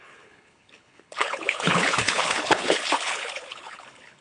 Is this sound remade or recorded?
remade